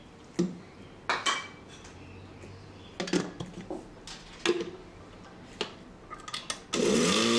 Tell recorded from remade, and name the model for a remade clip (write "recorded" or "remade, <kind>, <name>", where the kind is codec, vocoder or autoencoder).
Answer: recorded